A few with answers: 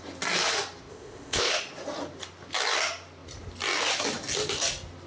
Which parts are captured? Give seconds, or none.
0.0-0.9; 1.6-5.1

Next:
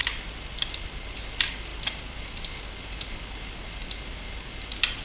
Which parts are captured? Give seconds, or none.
1.2-5.0

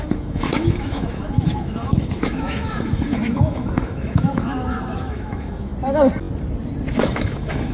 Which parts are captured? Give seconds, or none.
5.7-6.9

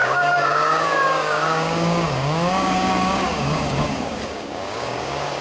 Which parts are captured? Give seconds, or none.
none

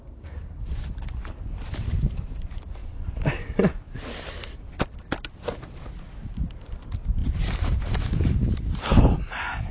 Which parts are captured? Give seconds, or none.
0.0-9.7

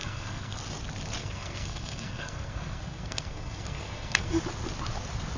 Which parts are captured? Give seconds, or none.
0.6-1.2; 4.4-5.4